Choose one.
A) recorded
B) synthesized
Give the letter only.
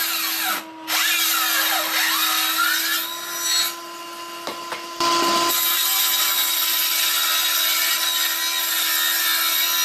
A